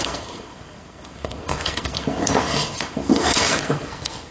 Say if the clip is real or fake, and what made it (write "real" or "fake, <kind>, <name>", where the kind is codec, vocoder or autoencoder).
fake, codec, SNAC